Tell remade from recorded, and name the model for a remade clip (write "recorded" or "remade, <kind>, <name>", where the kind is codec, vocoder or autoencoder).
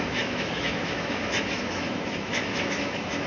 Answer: remade, autoencoder, DAC-VAE